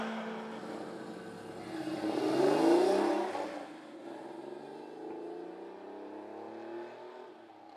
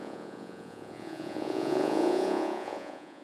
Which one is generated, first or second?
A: second